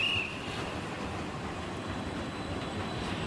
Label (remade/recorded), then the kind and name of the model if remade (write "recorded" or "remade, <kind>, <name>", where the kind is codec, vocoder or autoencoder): remade, vocoder, BigVGAN v2